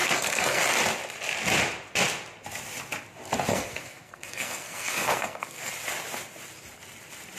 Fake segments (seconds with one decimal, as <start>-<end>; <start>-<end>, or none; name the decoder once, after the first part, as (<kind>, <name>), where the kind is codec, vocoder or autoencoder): 0.0-0.6 (codec, SNAC); 3.5-5.7

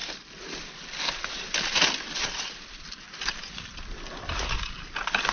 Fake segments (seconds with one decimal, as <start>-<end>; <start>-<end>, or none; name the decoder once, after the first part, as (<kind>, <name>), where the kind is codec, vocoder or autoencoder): none

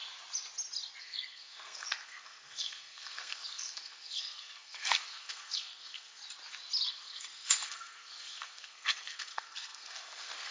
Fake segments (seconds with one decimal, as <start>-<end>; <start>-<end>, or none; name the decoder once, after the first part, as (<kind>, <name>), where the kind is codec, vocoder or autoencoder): 1.0-6.2 (codec, SNAC); 6.9-10.5

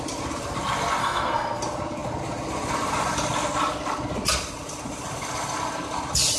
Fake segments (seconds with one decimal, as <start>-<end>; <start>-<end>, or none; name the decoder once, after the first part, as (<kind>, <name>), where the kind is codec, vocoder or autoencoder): 1.0-1.6 (codec, SNAC)

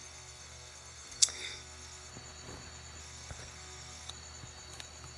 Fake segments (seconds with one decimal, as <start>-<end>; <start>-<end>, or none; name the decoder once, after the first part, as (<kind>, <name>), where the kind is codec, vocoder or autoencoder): 0.0-2.1 (codec, SNAC); 3.0-4.1

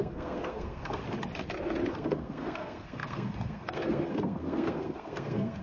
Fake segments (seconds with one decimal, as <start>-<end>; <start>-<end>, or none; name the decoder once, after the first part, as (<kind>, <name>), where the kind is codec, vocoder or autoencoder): 0.0-1.0 (codec, SNAC); 1.9-5.6